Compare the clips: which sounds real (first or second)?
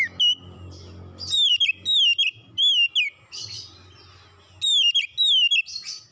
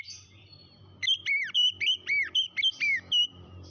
first